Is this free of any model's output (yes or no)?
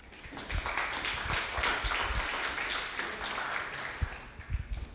yes